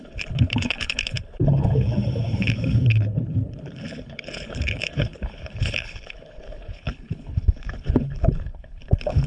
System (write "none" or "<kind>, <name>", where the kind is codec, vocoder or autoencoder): codec, HILCodec